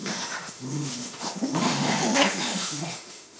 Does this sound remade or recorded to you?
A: remade